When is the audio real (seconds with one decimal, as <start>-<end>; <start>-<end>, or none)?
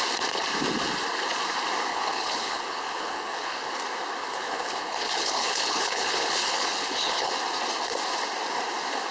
0.0-1.9; 3.7-4.2; 7.3-9.1